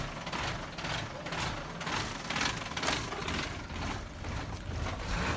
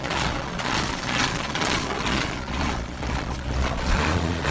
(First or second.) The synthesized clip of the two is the second